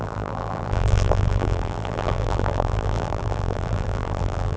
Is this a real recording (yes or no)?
no